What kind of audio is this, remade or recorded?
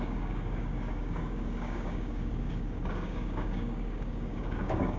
remade